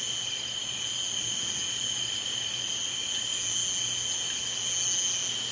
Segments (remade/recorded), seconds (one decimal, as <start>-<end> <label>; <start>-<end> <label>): 0.0-5.5 recorded

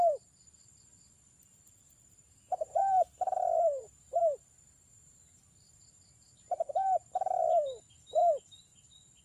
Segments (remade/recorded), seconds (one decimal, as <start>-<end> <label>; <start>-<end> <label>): 0.0-8.2 remade; 8.2-9.2 recorded